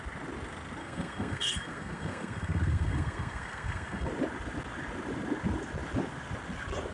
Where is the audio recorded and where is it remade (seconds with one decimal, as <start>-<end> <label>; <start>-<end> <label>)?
0.0-0.8 recorded; 0.8-4.1 remade; 4.1-6.9 recorded